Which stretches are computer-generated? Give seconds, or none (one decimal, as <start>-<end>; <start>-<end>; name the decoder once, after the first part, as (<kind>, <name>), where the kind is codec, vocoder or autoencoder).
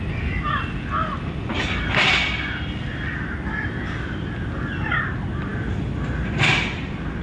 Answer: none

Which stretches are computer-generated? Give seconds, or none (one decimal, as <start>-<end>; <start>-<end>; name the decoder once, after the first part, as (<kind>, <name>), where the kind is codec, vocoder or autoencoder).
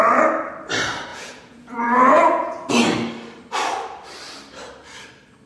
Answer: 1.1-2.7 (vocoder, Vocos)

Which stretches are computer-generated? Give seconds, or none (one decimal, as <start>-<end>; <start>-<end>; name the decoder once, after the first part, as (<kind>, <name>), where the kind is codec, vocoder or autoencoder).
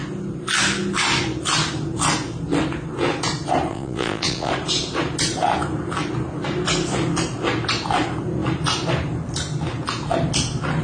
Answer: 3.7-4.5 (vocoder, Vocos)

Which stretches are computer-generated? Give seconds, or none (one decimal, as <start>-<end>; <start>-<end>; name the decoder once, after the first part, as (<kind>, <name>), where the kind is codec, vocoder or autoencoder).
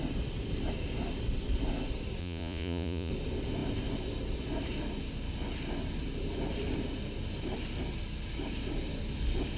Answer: 2.2-3.1 (vocoder, Vocos)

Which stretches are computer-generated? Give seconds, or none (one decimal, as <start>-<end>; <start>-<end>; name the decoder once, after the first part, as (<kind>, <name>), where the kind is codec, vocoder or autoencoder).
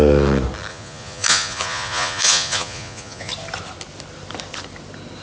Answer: 0.7-3.3 (vocoder, Vocos)